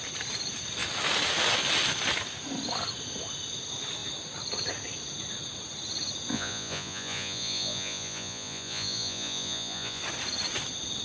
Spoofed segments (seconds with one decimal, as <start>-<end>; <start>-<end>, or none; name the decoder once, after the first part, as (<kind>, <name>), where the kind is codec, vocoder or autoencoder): 6.3-10.0 (vocoder, Vocos)